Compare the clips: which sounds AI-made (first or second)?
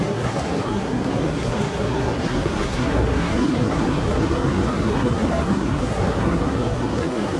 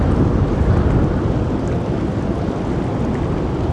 first